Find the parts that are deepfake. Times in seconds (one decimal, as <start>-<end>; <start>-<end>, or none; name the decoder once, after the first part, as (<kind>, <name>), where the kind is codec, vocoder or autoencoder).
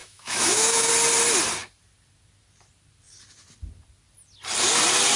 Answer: 0.0-0.9 (autoencoder, DAC-VAE)